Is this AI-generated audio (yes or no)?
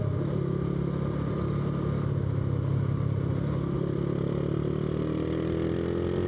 no